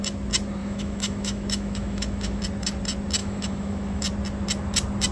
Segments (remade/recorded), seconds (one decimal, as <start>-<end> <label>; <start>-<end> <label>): 0.0-0.6 recorded; 0.6-2.4 remade; 2.4-3.2 recorded; 3.2-4.0 remade; 4.0-5.1 recorded